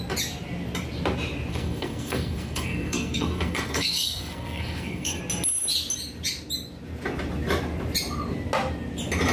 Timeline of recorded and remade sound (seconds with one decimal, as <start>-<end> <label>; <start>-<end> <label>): 0.0-1.5 recorded; 1.5-5.2 remade; 5.2-9.3 recorded